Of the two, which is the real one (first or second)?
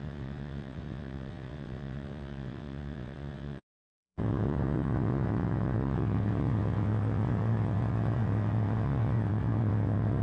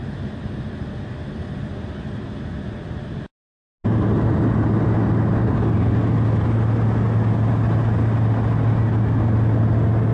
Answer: second